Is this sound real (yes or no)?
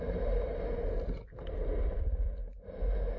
yes